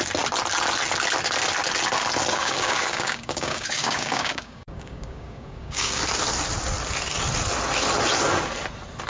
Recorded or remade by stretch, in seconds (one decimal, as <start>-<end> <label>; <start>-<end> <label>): 0.0-2.3 recorded; 2.3-6.0 remade; 6.0-9.1 recorded